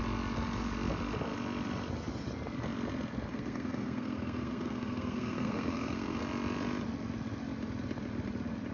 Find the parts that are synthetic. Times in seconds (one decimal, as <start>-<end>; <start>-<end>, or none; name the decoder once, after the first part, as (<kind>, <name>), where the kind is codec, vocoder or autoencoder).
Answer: 3.3-6.2 (codec, SNAC)